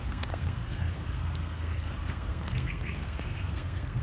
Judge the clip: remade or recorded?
remade